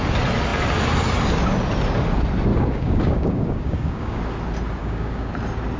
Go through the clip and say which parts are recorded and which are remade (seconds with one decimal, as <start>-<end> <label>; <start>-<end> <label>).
0.0-2.5 recorded; 2.5-4.2 remade; 4.2-4.8 recorded; 4.8-5.3 remade; 5.3-5.8 recorded